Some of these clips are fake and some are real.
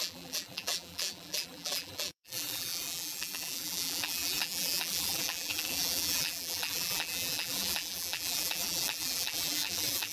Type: fake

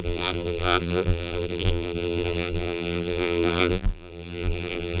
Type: fake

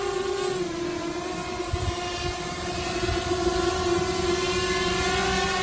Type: real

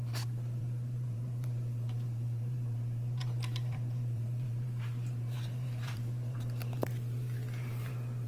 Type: fake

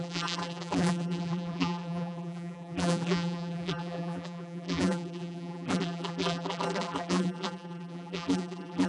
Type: fake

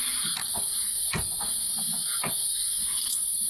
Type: fake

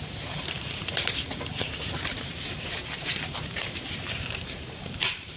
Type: fake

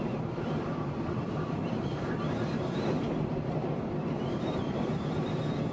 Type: fake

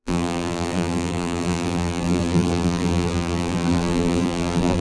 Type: fake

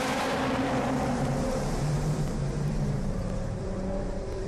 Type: fake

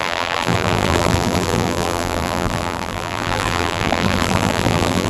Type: fake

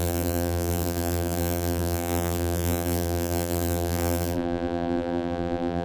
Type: fake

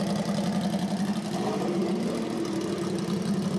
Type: real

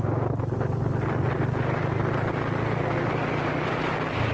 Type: real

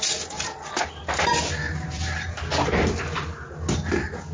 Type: real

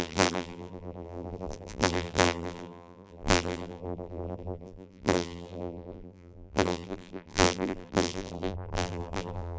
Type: fake